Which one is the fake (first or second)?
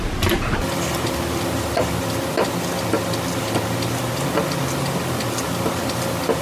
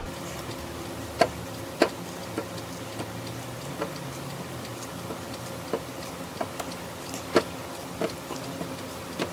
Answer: second